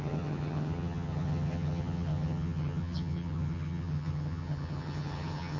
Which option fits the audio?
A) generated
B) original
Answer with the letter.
A